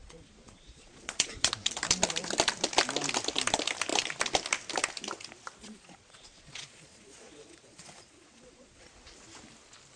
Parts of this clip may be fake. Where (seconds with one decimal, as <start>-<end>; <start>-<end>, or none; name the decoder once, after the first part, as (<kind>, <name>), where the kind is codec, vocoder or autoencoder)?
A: 0.0-1.5 (vocoder, Vocos); 5.6-8.9